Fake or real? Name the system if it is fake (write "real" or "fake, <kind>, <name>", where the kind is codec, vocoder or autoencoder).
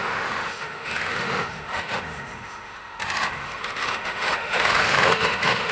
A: fake, autoencoder, DAC-VAE